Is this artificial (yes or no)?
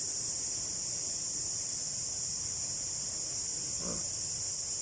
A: no